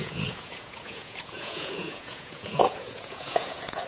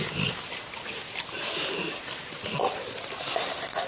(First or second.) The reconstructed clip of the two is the first